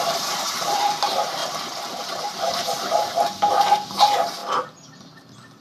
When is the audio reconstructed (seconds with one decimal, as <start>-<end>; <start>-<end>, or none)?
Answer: 0.0-1.4; 2.0-4.4; 5.0-5.6